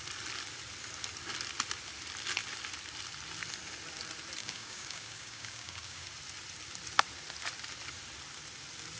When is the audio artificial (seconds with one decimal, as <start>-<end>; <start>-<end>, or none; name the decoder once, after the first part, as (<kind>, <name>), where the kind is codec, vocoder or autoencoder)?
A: 4.4-6.1 (codec, DAC)